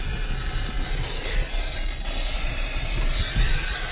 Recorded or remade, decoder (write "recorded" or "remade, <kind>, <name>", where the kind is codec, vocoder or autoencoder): recorded